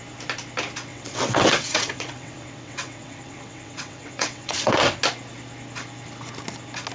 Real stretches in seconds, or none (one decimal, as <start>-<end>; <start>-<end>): 0.0-0.9; 5.0-6.9